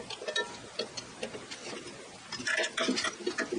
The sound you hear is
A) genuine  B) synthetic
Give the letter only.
A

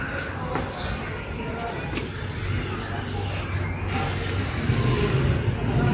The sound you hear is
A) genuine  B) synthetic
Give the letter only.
A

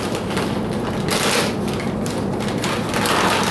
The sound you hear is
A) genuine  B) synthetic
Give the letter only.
A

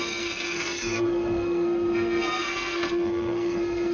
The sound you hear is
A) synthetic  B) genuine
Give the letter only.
A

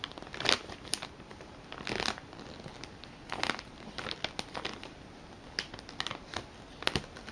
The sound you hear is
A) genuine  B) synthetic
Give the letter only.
A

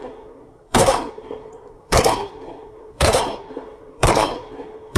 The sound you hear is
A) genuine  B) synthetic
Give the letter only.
B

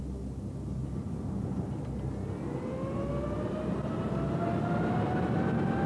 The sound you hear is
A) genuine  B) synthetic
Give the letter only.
A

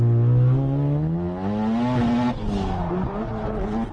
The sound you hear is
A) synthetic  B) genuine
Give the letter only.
B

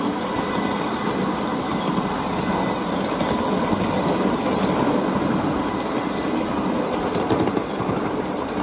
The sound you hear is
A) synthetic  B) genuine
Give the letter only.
B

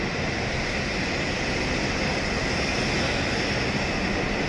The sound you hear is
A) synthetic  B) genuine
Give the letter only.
B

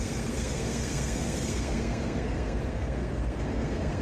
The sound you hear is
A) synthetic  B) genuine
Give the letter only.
A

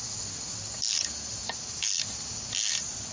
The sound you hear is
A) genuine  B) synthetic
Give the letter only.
A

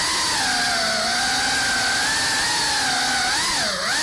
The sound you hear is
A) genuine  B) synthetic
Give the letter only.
A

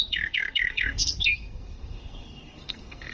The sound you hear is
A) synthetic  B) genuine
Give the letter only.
A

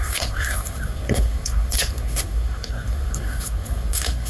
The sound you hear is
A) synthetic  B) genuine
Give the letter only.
A